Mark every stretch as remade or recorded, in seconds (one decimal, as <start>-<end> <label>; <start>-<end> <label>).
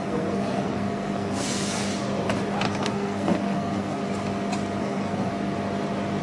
0.0-1.9 remade; 1.9-2.7 recorded; 2.7-4.0 remade; 4.0-4.8 recorded; 4.8-5.3 remade; 5.3-6.2 recorded